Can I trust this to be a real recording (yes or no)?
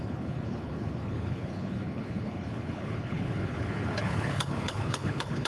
no